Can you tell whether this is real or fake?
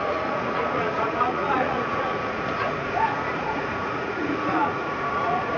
fake